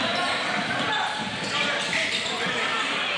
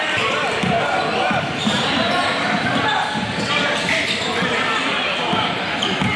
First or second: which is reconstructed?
first